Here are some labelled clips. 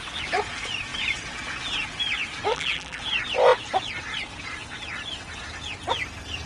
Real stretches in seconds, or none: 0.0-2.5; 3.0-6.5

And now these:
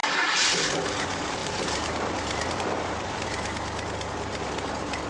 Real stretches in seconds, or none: 0.0-1.4; 3.2-5.1

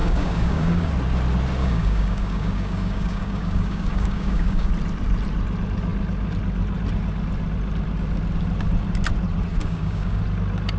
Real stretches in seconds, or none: 0.9-1.6; 4.7-9.5; 10.2-10.8

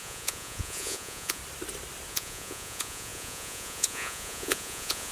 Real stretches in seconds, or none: 1.4-2.1

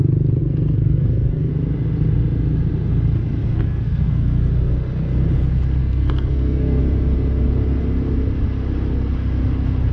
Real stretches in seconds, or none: 0.0-0.4; 1.5-3.4; 4.5-5.8; 6.8-9.9